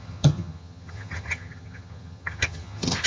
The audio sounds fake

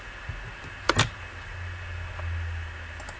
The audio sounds real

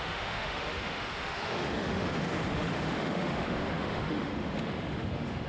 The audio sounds fake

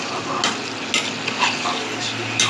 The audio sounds real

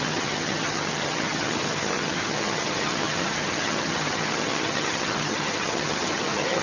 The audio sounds fake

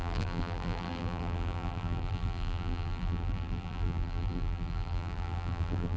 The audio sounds fake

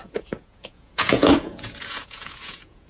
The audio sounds fake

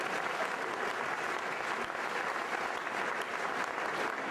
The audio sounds real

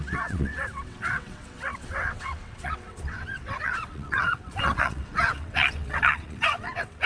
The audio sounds fake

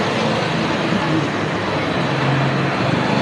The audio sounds real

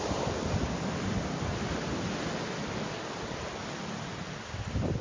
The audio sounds real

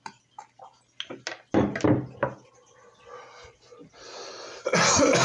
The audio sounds real